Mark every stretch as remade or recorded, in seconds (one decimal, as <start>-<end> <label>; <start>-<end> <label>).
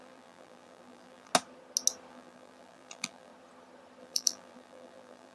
0.0-1.3 remade; 1.3-2.1 recorded; 2.1-3.3 remade; 3.3-4.0 recorded; 4.0-5.3 remade